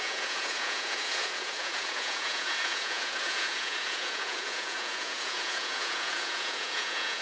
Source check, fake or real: fake